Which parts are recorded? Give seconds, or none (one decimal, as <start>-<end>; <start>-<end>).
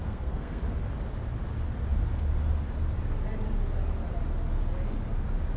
0.6-5.6